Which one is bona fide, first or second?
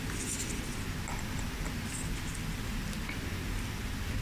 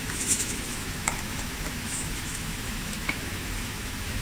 first